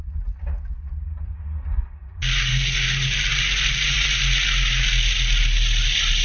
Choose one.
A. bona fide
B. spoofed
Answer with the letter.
A